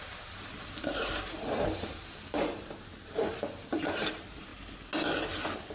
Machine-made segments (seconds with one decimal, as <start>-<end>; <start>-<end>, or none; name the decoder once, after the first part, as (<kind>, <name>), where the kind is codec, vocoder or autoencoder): 0.0-4.5 (vocoder, BigVGAN v2)